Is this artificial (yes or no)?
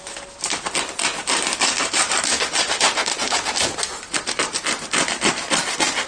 no